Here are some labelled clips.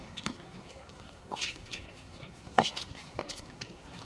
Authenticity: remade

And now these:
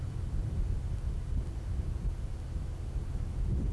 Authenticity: recorded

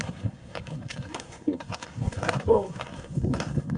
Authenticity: remade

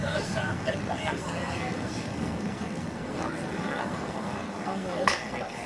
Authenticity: remade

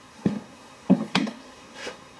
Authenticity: remade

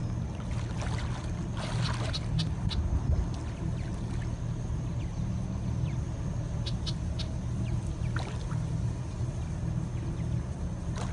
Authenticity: recorded